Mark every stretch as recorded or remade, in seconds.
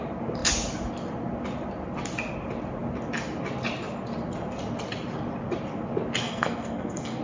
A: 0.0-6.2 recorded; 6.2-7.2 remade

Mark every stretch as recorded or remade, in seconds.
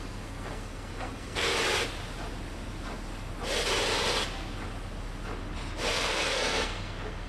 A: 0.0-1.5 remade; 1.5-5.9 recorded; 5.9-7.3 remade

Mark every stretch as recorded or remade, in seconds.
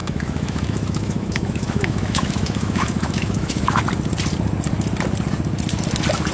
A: 0.0-3.8 remade; 3.8-6.3 recorded